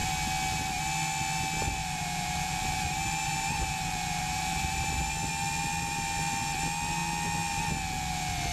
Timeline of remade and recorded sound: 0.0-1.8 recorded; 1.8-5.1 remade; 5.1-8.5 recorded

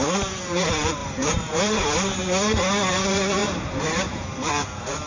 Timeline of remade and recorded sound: 0.0-2.2 remade; 2.2-2.9 recorded; 2.9-5.1 remade

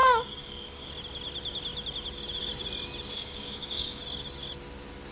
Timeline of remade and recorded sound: 0.0-0.9 remade; 0.9-3.1 recorded; 3.1-4.0 remade; 4.0-5.1 recorded

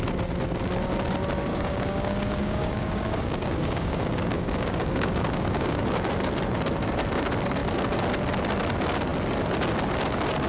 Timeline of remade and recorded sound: 0.0-1.5 recorded; 1.5-6.1 remade; 6.1-10.5 recorded

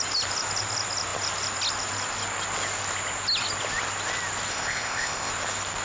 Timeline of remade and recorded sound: 0.0-4.5 recorded; 4.5-5.3 remade; 5.3-5.8 recorded

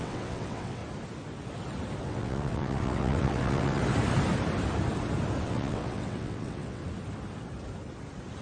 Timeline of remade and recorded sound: 0.0-0.8 remade; 0.8-2.0 recorded; 2.0-3.8 remade; 3.8-5.4 recorded; 5.4-6.8 remade; 6.8-8.4 recorded